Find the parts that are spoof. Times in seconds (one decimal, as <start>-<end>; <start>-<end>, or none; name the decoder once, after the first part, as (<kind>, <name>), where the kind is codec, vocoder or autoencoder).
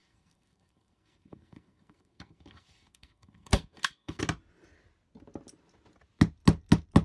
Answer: 0.0-4.2 (codec, SNAC)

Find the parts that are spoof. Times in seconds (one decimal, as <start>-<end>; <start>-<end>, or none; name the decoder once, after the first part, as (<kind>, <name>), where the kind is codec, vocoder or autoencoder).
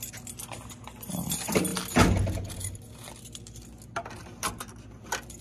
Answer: none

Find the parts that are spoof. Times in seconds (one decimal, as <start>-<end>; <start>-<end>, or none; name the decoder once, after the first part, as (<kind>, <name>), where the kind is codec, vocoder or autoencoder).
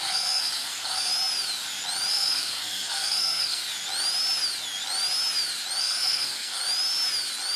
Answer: 0.0-1.1 (codec, SNAC); 2.1-3.6; 5.8-6.6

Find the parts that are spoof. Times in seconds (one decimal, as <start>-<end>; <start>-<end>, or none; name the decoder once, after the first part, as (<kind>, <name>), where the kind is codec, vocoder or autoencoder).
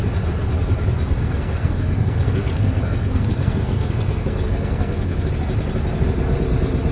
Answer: 1.2-5.3 (codec, SNAC)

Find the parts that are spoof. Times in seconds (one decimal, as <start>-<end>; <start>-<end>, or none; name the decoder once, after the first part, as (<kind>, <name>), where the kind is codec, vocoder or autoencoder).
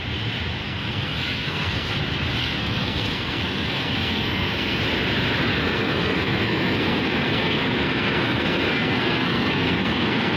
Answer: 0.6-1.9 (codec, SNAC); 2.4-4.8; 5.5-10.4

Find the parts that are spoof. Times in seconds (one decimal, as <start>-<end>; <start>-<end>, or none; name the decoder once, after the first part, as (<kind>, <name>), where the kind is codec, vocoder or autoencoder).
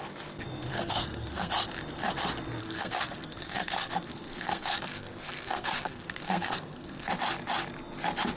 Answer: 0.7-1.5 (codec, SNAC); 2.6-7.1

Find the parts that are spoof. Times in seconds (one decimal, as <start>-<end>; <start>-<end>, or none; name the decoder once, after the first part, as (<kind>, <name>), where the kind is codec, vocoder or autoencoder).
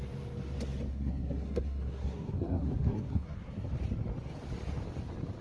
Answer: 0.9-3.7 (codec, SNAC)